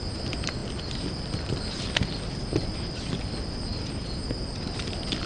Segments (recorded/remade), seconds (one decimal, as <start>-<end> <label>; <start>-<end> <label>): 0.0-5.3 recorded